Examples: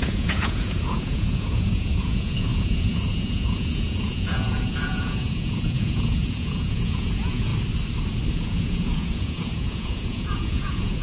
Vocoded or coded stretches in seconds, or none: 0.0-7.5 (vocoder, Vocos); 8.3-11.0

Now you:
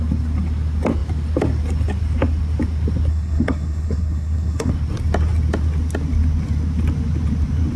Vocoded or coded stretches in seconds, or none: 3.1-4.7 (codec, SNAC)

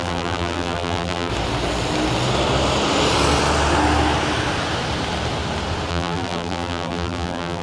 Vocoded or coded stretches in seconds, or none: 0.0-1.3 (vocoder, BigVGAN v2); 5.9-7.6

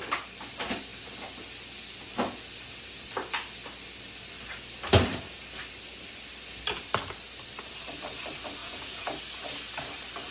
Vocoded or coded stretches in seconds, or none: 8.6-9.2 (vocoder, Vocos)

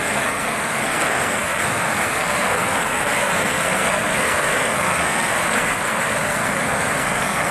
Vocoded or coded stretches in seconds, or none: 0.0-7.5 (codec, SNAC)

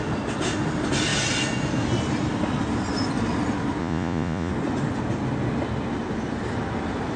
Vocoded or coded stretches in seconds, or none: 3.8-4.5 (vocoder, Vocos)